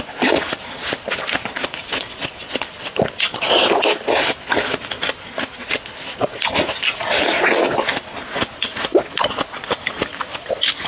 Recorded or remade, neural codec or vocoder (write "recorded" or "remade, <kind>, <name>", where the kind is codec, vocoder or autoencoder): recorded